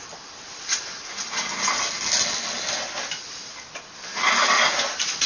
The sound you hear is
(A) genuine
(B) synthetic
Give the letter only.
A